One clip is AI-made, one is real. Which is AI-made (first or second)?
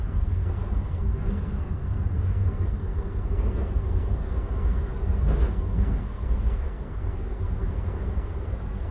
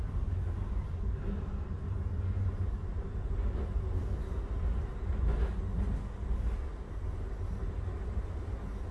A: first